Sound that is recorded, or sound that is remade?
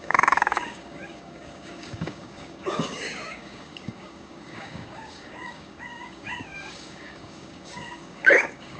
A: remade